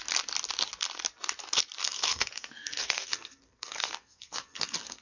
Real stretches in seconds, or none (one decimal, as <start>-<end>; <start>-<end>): 0.0-1.8